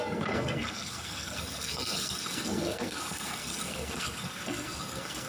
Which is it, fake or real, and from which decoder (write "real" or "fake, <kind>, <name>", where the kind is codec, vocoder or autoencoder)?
fake, codec, SNAC